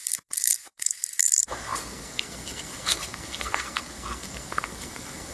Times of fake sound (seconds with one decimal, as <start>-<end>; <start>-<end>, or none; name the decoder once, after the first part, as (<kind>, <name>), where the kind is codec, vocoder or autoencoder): 0.0-5.3 (codec, SNAC)